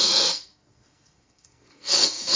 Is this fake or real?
fake